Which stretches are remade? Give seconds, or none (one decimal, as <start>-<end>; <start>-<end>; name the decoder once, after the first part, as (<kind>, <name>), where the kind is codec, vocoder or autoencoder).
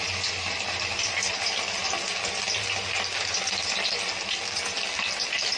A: none